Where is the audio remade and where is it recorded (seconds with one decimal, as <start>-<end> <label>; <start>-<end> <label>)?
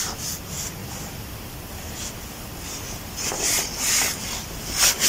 0.0-5.1 recorded